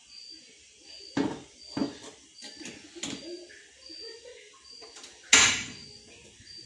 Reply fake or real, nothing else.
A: real